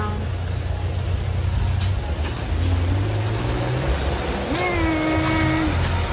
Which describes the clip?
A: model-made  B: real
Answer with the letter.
B